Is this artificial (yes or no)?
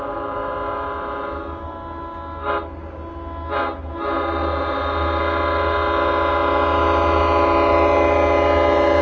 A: no